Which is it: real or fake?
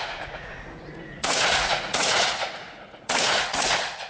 fake